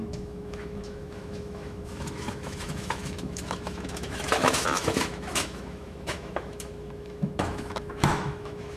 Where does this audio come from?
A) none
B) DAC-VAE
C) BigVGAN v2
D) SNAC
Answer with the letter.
B